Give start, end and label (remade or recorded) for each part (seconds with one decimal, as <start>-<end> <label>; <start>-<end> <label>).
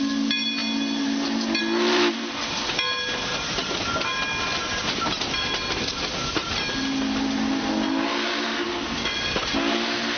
0.0-10.2 recorded